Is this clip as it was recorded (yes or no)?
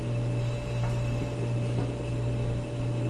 yes